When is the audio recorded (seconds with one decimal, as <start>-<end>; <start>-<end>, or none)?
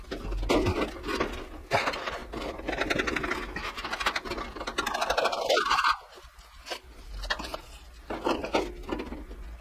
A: 0.0-9.6